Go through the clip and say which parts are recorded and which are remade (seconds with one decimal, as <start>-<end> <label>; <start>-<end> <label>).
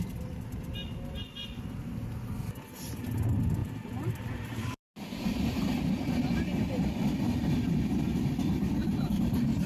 0.0-3.6 recorded; 3.6-5.4 remade; 5.4-8.8 recorded; 8.8-9.7 remade